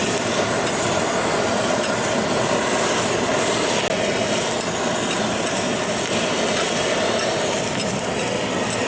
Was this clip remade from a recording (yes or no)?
no